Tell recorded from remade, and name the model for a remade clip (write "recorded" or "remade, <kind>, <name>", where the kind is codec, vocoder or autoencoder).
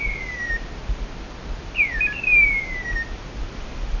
recorded